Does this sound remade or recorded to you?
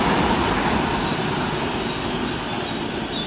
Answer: recorded